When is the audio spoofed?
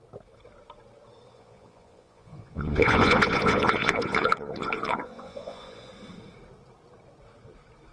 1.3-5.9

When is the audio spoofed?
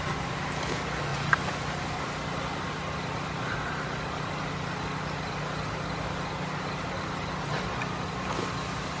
none